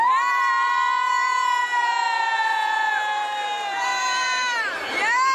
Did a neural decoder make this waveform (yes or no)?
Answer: yes